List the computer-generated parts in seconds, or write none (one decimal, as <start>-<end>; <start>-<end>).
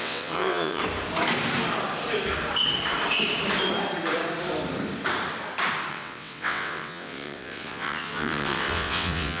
0.0-0.8; 5.9-9.4